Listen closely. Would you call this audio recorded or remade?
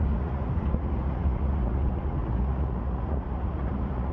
remade